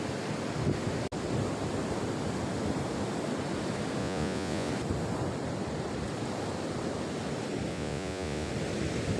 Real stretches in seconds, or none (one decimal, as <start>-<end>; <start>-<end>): 0.0-4.0; 4.7-7.7; 8.5-9.2